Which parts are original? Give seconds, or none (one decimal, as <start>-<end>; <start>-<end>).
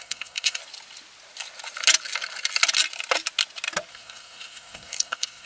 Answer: 0.6-3.9